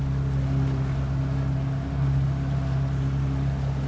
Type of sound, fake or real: real